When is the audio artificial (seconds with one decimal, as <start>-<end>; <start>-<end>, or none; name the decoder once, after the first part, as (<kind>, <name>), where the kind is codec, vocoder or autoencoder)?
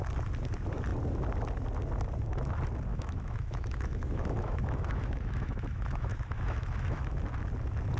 2.9-7.2 (autoencoder, DAC-VAE)